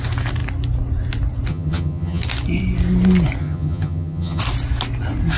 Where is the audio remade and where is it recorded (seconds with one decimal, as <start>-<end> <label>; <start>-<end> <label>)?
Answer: 0.0-1.5 recorded; 1.5-2.2 remade; 2.2-3.4 recorded; 3.4-4.4 remade; 4.4-5.4 recorded